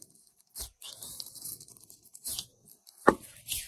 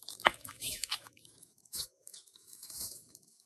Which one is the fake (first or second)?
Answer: second